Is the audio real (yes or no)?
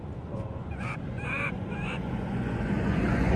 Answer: no